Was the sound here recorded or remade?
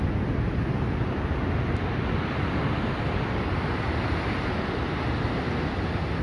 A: recorded